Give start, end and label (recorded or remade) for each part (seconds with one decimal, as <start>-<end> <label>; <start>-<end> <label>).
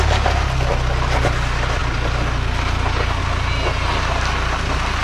0.0-5.0 recorded